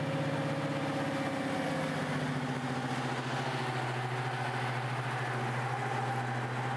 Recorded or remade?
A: recorded